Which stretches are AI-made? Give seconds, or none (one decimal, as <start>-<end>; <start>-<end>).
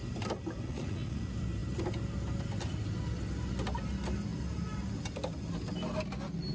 0.7-1.2